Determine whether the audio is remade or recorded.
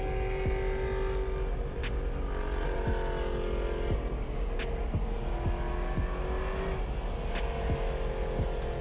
recorded